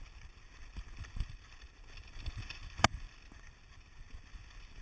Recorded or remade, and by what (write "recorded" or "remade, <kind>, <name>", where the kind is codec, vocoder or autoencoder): recorded